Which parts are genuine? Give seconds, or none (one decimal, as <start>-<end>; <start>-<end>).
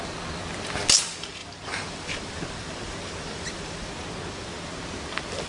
0.0-1.4; 3.9-5.5